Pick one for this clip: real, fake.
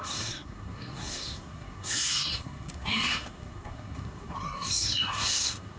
fake